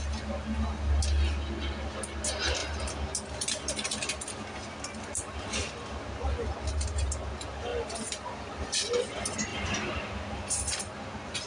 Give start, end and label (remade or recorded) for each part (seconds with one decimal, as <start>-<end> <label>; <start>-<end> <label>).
0.0-7.7 recorded; 7.7-8.6 remade; 8.6-9.5 recorded; 9.5-10.8 remade; 10.8-11.5 recorded